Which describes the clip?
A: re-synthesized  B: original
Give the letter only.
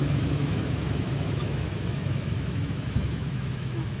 A